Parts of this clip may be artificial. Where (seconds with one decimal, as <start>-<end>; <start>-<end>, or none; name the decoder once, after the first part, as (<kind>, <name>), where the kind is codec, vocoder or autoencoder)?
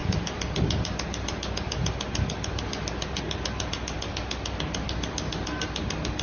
none